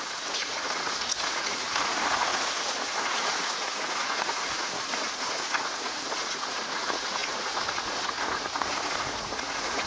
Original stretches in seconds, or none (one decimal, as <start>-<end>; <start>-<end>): none